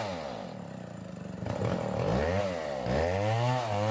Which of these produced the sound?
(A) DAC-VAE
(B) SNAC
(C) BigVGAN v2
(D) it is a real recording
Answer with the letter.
D